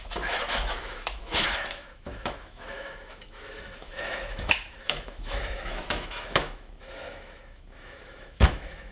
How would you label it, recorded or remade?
remade